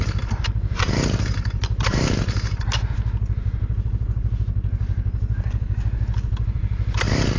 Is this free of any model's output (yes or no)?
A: yes